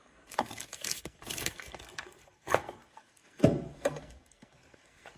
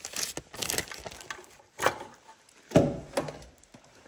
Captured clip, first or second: second